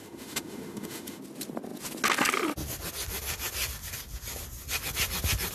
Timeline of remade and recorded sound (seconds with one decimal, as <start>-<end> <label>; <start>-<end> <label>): 0.0-1.2 remade; 1.2-5.5 recorded